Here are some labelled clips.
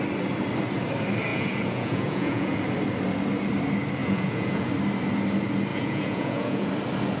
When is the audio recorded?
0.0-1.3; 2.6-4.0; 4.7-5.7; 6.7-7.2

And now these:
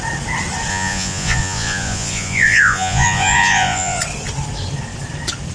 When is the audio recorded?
0.0-0.7; 4.0-5.5